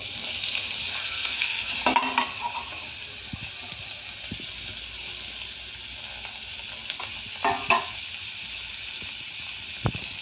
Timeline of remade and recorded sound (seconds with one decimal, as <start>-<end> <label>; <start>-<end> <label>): 0.0-1.0 recorded; 1.0-1.7 remade; 1.7-10.2 recorded